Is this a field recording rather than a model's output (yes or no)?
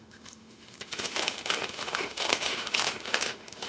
no